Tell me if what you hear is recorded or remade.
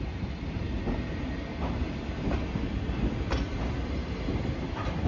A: recorded